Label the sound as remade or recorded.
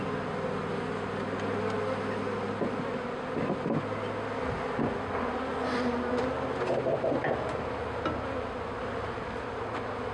recorded